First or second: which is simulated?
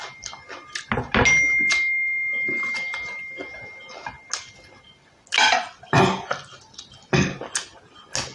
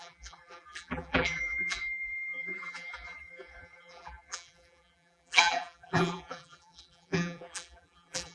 second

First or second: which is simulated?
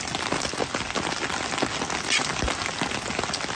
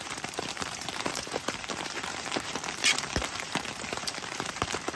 second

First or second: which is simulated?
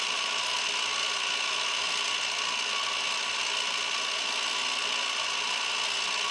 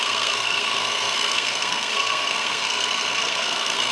second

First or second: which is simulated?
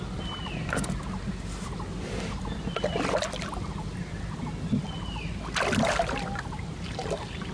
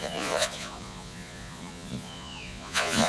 second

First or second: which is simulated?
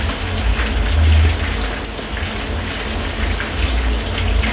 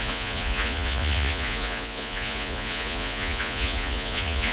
second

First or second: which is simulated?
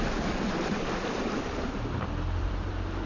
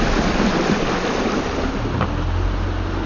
first